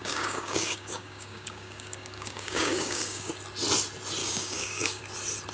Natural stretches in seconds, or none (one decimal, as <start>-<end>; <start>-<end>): 3.3-4.2; 5.0-5.5